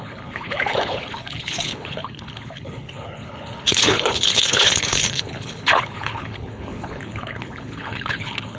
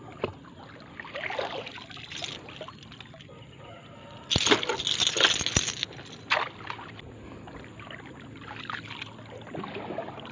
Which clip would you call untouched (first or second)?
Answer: second